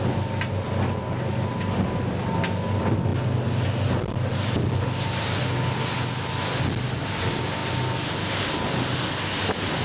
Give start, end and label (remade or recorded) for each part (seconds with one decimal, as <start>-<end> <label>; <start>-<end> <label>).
0.0-9.8 recorded